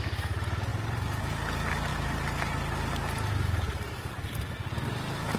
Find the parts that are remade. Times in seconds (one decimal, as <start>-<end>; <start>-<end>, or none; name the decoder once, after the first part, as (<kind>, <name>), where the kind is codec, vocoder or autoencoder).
none